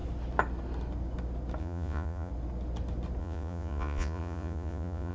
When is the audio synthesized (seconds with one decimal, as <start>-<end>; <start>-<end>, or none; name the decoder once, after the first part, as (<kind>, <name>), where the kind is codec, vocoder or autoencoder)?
1.6-2.3 (vocoder, Vocos); 3.2-5.1